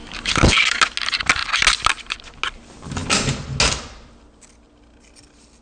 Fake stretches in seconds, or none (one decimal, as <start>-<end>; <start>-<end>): 0.0-0.8